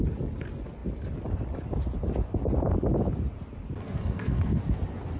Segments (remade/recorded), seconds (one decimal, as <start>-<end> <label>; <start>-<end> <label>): 0.0-3.8 recorded; 3.8-4.6 remade; 4.6-5.2 recorded